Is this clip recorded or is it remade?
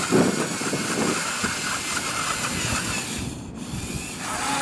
recorded